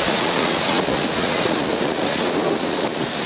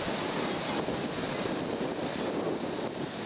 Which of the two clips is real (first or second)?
second